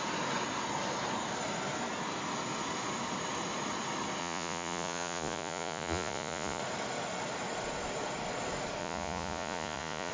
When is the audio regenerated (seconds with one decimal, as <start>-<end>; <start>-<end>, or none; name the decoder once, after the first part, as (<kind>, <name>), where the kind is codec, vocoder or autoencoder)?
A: 4.2-6.6 (vocoder, Vocos); 8.8-10.1